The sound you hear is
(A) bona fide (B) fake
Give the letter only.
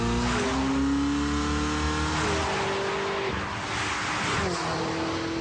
A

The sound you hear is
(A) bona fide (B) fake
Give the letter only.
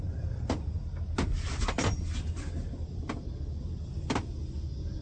A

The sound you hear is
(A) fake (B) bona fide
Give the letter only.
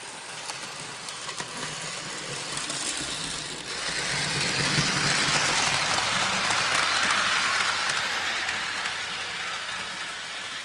B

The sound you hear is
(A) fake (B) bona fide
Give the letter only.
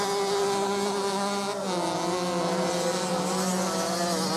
B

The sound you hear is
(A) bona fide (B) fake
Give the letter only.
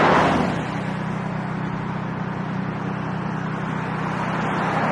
A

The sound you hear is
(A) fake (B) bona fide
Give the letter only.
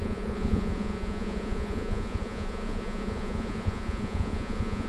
A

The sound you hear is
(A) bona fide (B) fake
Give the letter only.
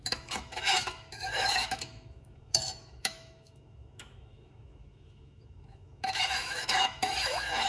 B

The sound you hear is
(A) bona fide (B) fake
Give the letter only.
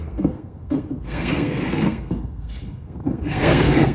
B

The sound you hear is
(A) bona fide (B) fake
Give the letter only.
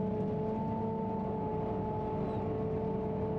A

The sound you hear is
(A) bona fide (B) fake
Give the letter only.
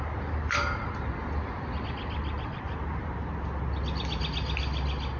A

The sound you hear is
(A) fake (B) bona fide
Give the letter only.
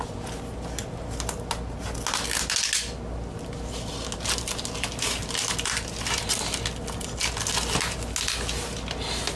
B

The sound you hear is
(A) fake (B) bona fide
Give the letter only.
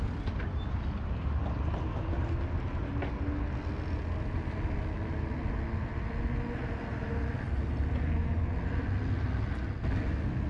B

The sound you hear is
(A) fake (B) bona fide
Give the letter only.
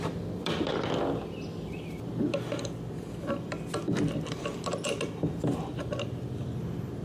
B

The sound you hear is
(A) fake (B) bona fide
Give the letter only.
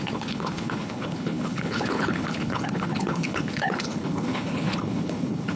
A